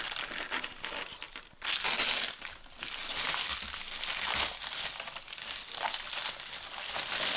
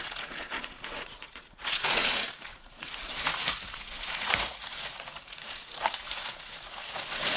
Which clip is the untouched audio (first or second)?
first